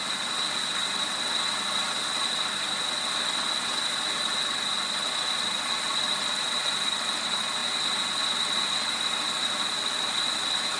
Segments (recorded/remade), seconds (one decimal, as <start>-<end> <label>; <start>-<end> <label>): 0.0-10.8 recorded